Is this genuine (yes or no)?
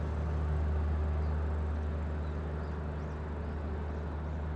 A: yes